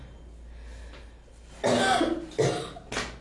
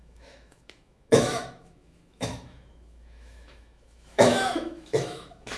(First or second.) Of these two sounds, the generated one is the second